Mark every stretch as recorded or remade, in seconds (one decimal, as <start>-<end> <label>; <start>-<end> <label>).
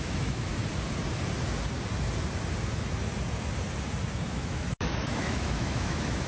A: 0.0-0.5 remade; 0.5-4.3 recorded; 4.3-6.3 remade